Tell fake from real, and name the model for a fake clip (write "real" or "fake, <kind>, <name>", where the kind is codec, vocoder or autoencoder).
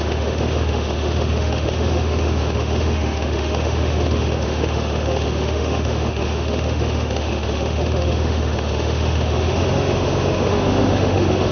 fake, autoencoder, DAC-VAE